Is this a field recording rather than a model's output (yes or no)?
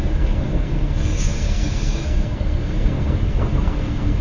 no